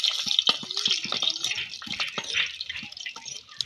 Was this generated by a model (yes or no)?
no